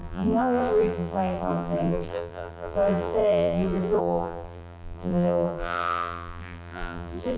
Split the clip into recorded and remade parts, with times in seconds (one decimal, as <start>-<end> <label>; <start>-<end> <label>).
0.0-7.4 remade